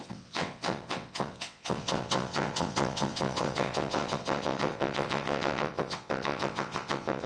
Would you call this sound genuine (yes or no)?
no